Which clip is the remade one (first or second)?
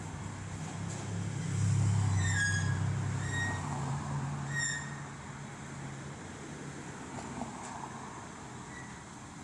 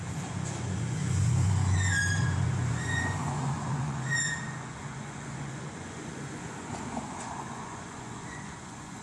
second